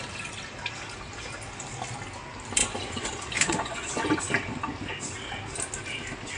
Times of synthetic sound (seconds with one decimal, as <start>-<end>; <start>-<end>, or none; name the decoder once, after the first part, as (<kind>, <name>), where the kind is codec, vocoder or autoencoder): 2.6-4.2 (vocoder, Vocos)